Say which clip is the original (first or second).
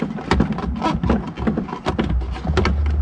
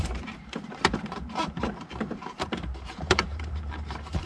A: first